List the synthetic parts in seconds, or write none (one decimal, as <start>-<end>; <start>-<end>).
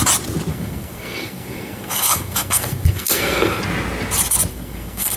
0.5-3.6; 4.5-5.2